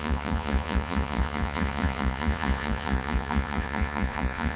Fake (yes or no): yes